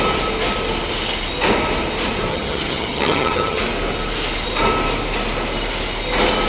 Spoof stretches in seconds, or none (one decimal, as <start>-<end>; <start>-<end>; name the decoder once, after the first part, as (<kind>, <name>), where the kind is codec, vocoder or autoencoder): 2.3-3.6 (vocoder, HiFi-GAN)